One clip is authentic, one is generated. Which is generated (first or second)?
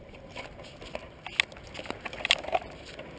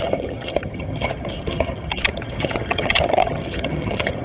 second